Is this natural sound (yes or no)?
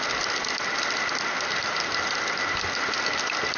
yes